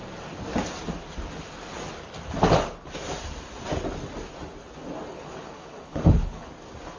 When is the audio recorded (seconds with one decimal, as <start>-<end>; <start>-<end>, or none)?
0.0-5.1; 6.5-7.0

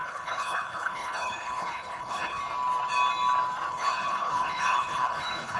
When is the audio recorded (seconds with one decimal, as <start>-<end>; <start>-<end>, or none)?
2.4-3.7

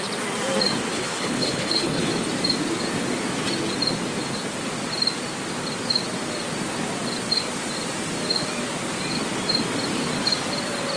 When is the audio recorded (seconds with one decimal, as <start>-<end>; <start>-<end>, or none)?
0.0-0.9; 2.1-11.0